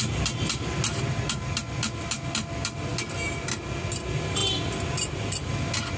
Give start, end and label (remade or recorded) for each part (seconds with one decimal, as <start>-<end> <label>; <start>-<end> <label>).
0.0-6.0 recorded